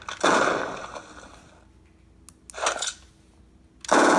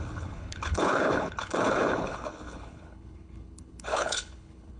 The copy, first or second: second